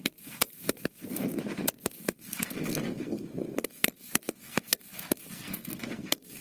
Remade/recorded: remade